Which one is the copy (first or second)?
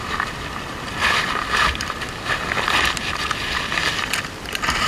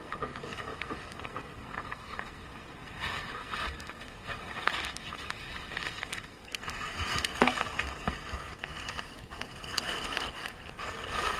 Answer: second